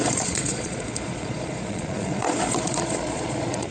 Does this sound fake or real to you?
fake